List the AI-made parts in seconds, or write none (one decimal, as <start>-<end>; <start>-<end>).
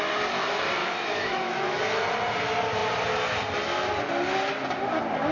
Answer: 0.8-1.8